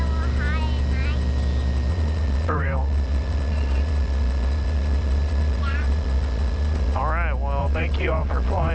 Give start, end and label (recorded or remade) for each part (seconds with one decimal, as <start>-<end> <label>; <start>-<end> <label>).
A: 0.0-1.9 recorded; 1.9-7.0 remade; 7.0-7.6 recorded; 7.6-8.7 remade